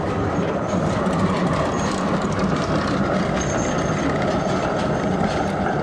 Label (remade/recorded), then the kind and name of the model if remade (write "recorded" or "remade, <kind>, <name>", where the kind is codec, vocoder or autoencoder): recorded